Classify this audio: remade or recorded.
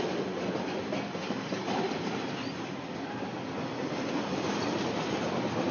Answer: recorded